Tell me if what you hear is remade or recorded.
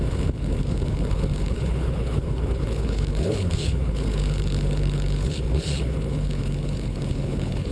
remade